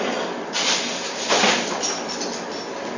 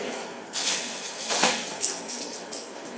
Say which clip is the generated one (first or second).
second